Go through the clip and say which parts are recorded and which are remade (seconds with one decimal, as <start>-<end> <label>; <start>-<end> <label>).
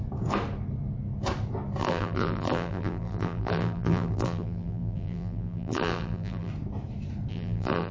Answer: 0.0-1.8 recorded; 1.8-6.5 remade; 6.5-7.3 recorded; 7.3-7.9 remade